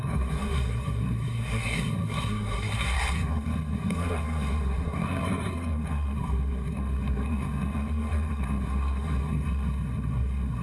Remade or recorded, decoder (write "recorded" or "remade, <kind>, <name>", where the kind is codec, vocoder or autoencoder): remade, codec, SNAC